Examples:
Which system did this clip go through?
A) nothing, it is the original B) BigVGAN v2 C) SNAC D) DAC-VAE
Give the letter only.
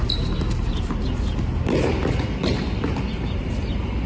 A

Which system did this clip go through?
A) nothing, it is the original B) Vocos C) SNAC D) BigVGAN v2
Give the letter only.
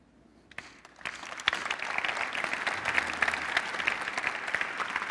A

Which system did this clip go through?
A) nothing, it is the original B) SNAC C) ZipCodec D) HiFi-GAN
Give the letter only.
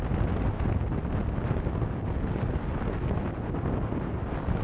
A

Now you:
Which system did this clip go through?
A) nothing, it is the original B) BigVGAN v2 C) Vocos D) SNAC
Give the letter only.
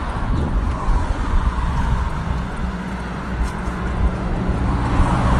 C